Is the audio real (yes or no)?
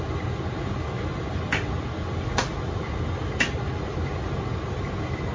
yes